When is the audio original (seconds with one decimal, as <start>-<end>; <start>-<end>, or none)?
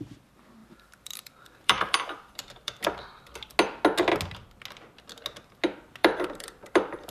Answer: 0.0-0.6; 3.2-6.0